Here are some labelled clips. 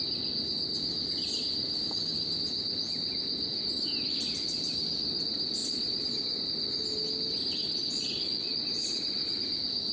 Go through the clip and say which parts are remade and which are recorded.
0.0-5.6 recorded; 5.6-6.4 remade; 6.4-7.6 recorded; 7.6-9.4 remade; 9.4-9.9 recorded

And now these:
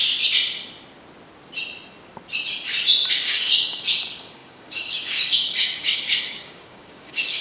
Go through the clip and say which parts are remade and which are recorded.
0.0-3.1 recorded; 3.1-7.4 remade